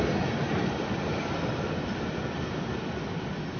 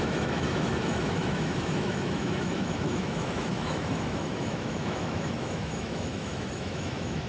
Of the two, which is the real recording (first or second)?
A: first